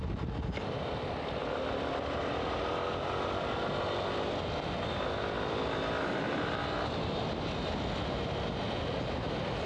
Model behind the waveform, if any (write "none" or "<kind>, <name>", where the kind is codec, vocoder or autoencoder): none